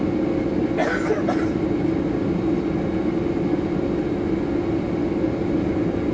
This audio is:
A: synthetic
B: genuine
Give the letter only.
B